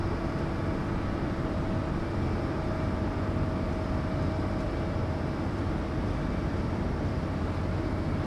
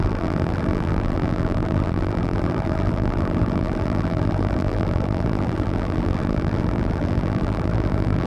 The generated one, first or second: second